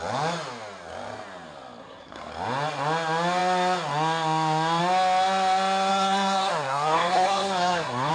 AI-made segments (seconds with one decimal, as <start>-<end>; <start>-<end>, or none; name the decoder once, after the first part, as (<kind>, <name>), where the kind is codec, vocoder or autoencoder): 1.8-2.3 (codec, SNAC); 5.9-8.1